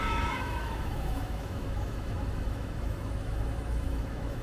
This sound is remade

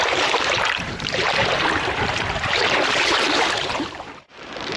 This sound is remade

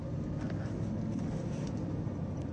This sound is recorded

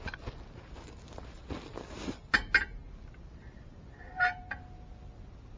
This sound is recorded